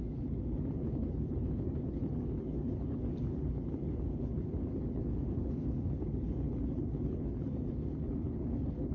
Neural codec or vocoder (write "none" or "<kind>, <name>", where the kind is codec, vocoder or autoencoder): codec, HILCodec